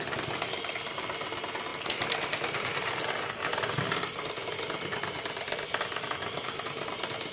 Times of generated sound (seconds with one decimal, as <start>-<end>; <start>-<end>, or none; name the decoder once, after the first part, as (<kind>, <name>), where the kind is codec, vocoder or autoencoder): 1.7-6.1 (vocoder, BigVGAN v2)